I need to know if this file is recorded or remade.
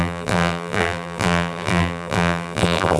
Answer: remade